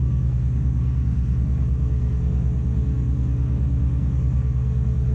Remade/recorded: remade